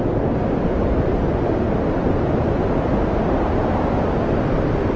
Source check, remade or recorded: recorded